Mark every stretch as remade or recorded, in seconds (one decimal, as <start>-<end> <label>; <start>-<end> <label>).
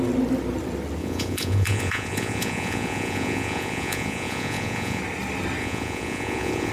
0.0-1.0 recorded; 1.0-5.0 remade; 5.0-5.6 recorded; 5.6-6.7 remade